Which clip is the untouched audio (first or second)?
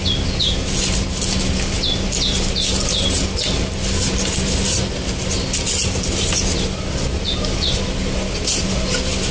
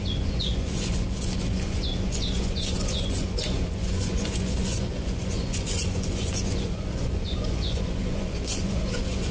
first